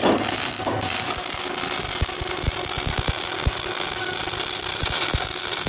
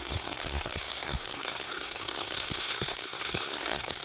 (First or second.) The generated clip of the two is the second